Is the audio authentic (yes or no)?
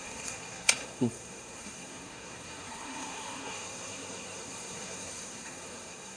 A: no